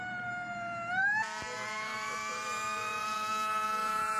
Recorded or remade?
remade